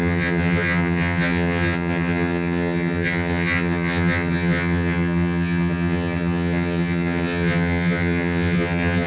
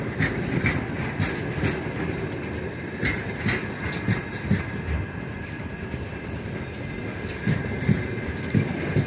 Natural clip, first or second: second